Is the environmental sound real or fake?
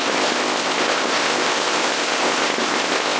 fake